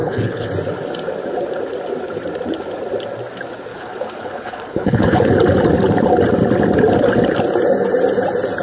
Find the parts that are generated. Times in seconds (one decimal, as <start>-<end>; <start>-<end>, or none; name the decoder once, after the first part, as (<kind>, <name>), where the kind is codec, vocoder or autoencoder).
0.0-0.5 (codec, HILCodec); 3.7-5.3